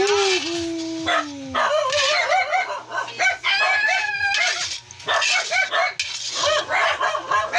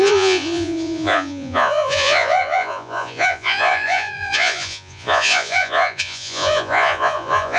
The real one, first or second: first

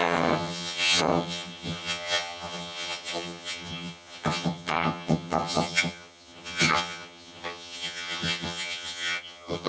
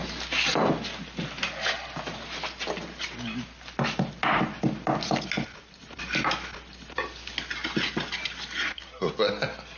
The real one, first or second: second